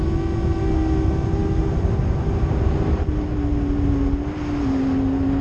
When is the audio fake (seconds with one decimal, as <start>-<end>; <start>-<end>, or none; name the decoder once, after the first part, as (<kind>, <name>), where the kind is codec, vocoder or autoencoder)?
none